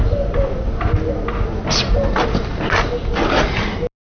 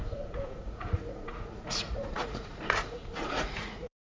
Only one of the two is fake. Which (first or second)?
second